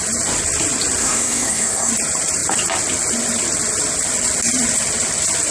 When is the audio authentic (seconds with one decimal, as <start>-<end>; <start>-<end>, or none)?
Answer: 0.0-1.0; 1.9-5.5